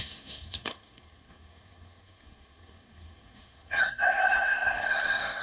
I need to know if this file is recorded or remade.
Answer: remade